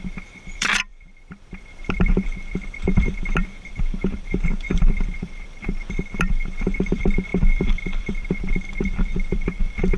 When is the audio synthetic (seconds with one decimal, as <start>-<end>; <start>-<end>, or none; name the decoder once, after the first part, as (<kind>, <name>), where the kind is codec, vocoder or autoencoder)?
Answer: 0.0-10.0 (vocoder, BigVGAN v2)